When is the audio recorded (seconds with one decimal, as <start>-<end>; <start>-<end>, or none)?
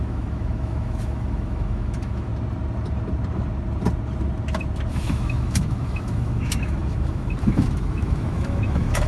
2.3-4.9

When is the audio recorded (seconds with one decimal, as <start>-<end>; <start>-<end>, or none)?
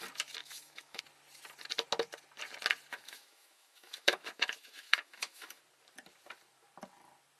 0.0-0.4; 1.0-2.9; 5.6-7.4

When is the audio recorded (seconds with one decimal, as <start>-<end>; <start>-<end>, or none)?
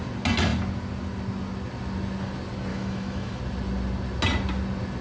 0.0-2.7; 3.4-5.0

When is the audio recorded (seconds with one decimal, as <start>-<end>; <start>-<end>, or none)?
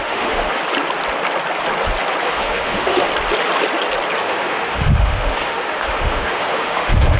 0.6-2.2; 3.1-4.2